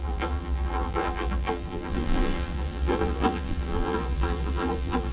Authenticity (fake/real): fake